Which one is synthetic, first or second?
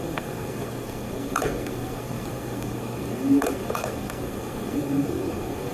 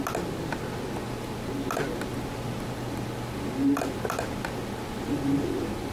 first